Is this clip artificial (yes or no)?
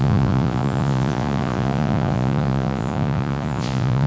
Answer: yes